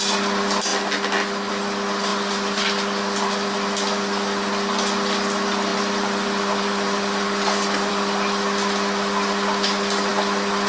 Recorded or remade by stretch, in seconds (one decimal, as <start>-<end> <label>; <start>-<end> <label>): 0.0-2.1 recorded; 2.1-4.5 remade; 4.5-5.7 recorded; 5.7-7.9 remade; 7.9-10.7 recorded